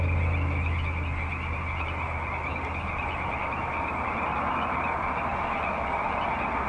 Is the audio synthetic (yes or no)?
no